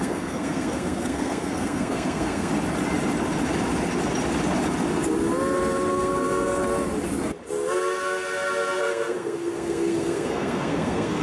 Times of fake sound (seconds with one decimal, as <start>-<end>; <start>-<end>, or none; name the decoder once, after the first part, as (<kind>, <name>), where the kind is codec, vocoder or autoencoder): 0.0-2.5 (codec, SNAC); 5.9-6.6; 8.8-11.2